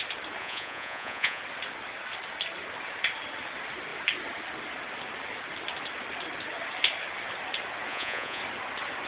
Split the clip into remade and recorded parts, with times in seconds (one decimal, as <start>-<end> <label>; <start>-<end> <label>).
0.0-0.4 recorded; 0.4-1.4 remade; 1.4-7.9 recorded; 7.9-8.4 remade; 8.4-9.1 recorded